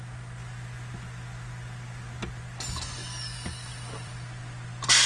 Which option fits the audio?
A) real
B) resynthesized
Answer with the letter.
A